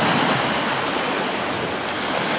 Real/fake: real